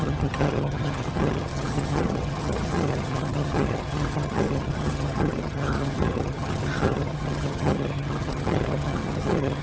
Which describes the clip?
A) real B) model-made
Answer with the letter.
B